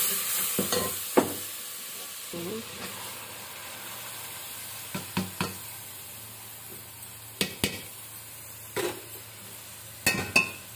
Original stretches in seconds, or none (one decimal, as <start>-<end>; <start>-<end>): 0.0-10.8